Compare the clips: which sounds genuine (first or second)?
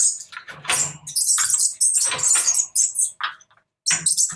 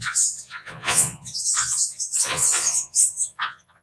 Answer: first